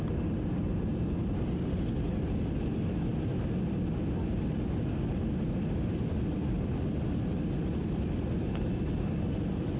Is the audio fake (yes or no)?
no